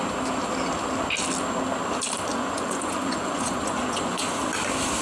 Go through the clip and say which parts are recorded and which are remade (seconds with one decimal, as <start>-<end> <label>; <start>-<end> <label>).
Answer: 0.0-2.3 recorded; 2.3-4.4 remade; 4.4-5.0 recorded